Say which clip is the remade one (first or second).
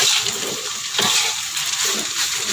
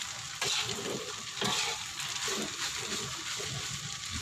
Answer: first